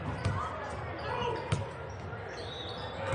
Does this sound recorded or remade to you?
recorded